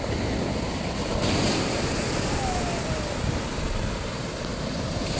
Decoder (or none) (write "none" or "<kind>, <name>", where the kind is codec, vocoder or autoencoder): none